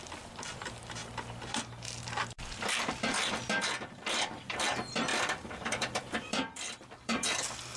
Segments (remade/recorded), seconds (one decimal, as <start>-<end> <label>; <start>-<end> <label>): 0.0-7.8 remade